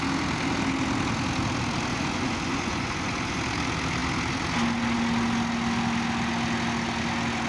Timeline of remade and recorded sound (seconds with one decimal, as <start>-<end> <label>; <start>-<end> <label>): 0.0-1.9 recorded; 1.9-3.4 remade; 3.4-7.5 recorded